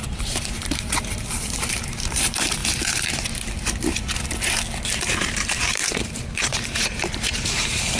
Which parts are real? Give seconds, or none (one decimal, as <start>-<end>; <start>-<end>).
2.6-5.0